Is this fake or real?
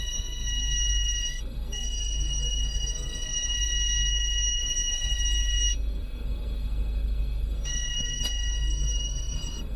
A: fake